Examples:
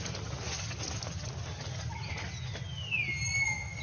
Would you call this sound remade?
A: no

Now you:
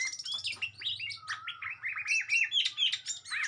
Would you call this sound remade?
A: no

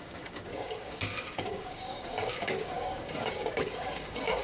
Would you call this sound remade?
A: yes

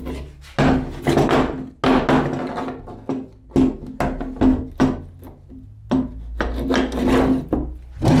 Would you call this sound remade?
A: no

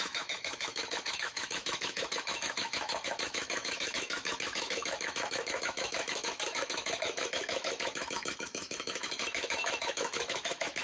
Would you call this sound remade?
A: yes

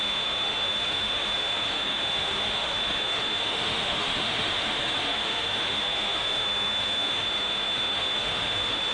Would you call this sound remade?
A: yes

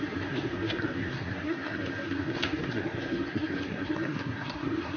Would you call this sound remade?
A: yes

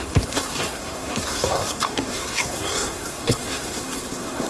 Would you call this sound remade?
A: yes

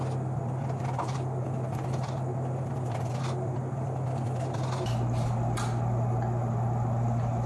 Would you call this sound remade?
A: no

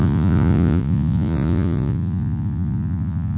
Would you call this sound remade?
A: yes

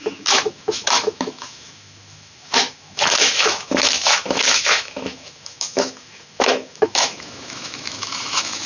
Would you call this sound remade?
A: yes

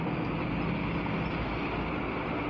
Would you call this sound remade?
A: no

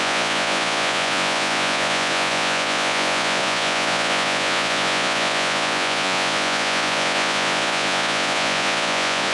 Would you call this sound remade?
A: yes